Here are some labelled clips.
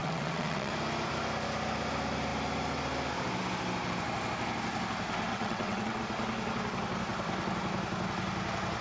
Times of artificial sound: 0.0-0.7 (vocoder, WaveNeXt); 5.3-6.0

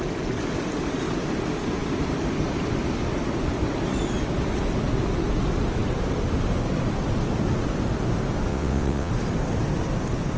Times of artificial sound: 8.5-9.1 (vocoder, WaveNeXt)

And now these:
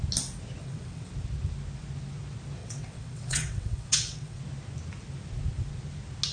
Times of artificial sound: 0.6-1.1 (vocoder, WaveNeXt); 2.6-4.4